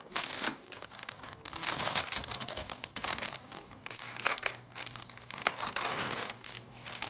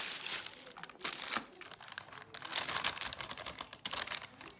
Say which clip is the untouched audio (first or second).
second